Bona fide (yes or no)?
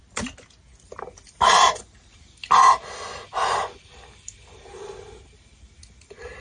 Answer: yes